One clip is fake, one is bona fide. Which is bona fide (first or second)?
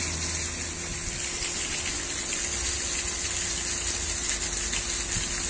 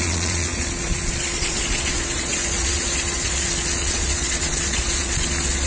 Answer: first